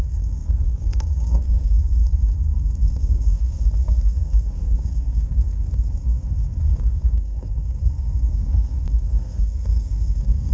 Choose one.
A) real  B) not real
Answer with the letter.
B